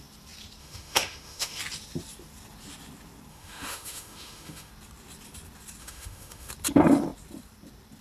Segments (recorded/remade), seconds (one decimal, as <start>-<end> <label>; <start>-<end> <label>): 0.0-0.6 recorded; 0.6-1.6 remade; 1.6-3.3 recorded; 3.3-4.7 remade; 4.7-5.8 recorded; 5.8-6.5 remade; 6.5-8.0 recorded